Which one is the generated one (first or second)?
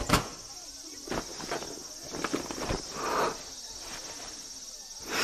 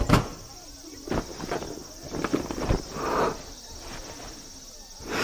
second